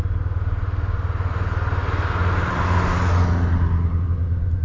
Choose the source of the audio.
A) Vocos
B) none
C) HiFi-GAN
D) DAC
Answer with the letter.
B